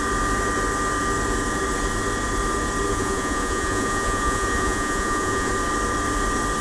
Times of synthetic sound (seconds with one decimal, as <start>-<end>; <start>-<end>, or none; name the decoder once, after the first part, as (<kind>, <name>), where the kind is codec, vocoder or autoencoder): 2.9-5.5 (vocoder, Vocos)